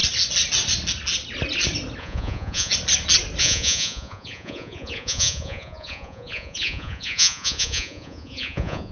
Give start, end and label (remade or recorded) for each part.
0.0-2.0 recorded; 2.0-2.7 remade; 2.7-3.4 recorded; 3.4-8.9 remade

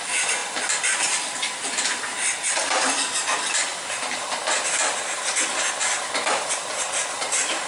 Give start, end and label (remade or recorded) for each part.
0.0-0.4 remade; 0.4-2.5 recorded; 2.5-7.7 remade

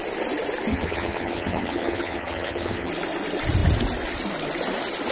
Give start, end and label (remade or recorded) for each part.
0.0-0.7 recorded; 0.7-2.9 remade; 2.9-5.1 recorded

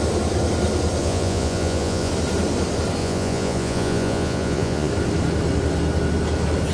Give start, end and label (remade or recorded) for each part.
0.0-1.0 recorded; 1.0-2.1 remade; 2.1-3.0 recorded; 3.0-4.9 remade; 4.9-6.7 recorded

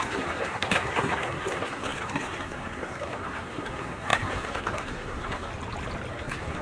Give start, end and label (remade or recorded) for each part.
0.0-5.5 remade; 5.5-6.1 recorded; 6.1-6.6 remade

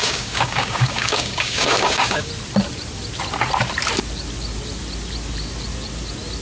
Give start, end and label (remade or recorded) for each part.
0.0-2.3 remade; 2.3-6.4 recorded

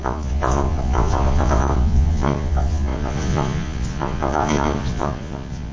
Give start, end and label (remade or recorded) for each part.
0.0-5.7 remade